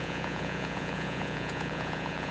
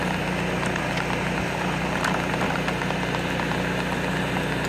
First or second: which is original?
second